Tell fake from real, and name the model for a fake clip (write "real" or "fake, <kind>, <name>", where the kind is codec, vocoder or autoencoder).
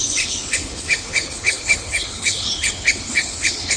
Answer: fake, codec, HILCodec